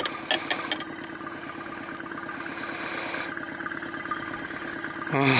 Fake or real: real